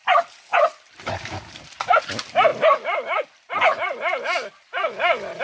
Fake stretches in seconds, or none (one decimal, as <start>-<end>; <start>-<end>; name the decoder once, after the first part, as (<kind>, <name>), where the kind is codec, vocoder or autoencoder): none